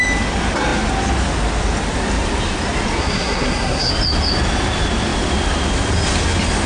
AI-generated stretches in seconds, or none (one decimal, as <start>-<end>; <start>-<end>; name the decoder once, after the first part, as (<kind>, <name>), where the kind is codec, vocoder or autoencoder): 3.0-3.9 (codec, SNAC)